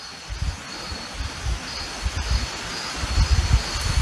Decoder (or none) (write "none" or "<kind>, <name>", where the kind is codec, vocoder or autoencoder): none